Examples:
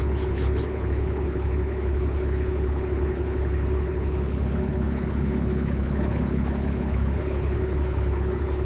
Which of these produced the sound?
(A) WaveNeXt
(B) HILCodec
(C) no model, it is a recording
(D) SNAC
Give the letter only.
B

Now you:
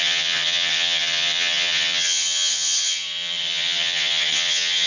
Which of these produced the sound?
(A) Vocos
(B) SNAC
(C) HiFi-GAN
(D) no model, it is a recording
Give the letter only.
C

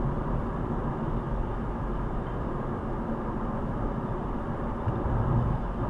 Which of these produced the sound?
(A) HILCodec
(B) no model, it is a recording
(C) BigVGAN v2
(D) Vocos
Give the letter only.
C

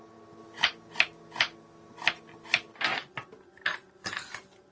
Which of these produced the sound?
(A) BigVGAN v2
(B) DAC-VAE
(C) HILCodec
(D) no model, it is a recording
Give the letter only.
D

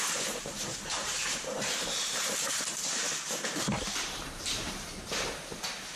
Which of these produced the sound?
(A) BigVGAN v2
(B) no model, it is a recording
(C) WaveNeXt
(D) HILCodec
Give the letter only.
A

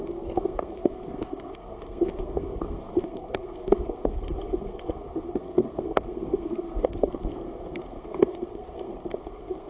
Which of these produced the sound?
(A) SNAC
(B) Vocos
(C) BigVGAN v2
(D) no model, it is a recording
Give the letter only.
A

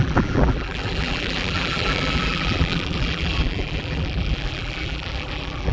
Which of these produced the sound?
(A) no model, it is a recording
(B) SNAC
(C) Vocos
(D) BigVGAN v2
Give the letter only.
D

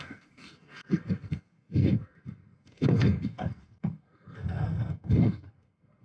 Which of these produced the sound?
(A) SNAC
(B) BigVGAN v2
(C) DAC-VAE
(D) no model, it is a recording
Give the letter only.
A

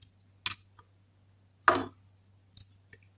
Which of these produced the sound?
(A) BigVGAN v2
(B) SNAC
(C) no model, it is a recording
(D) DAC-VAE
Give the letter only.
C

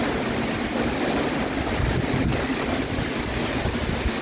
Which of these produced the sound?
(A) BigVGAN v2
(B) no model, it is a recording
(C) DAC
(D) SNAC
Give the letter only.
B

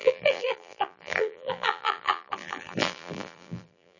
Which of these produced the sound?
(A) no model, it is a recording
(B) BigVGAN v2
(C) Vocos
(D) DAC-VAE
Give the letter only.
B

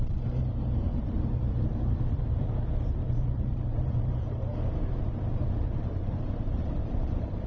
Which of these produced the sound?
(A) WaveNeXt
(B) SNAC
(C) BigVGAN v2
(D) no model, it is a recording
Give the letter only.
C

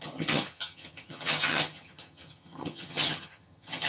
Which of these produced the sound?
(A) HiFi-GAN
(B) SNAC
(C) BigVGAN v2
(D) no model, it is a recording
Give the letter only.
A